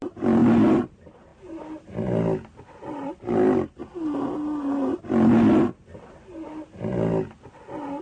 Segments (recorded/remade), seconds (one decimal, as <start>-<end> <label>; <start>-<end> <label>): 0.0-0.4 remade; 0.4-0.9 recorded; 0.9-3.8 remade; 3.8-8.0 recorded

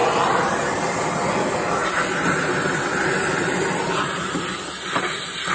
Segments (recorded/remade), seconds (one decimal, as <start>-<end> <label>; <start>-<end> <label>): 0.0-5.5 recorded